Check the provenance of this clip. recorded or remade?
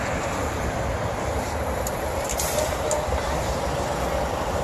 remade